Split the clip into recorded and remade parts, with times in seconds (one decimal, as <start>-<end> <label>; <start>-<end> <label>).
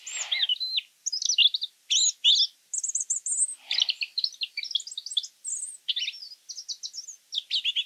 0.0-7.9 recorded